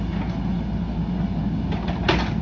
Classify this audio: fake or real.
real